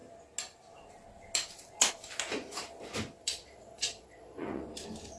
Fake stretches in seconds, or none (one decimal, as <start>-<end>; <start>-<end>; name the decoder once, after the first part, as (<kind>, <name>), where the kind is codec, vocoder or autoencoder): 3.2-4.6 (vocoder, Vocos)